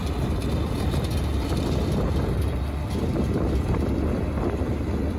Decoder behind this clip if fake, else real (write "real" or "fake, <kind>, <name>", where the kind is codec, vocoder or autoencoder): real